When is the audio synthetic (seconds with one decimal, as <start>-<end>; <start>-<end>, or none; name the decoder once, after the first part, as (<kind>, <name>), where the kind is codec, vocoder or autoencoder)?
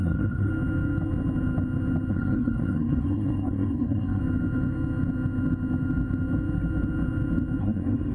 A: 0.0-0.5 (codec, SNAC); 2.1-4.2; 7.6-8.1